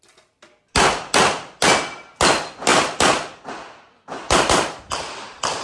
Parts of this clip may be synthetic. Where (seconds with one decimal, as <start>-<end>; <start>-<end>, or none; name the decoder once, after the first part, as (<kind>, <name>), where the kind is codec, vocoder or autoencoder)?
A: none